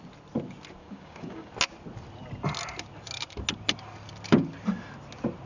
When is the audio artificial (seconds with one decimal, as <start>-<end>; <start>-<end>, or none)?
0.8-1.5